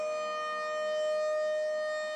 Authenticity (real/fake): real